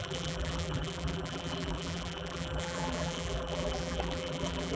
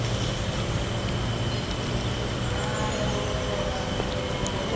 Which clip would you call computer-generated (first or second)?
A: first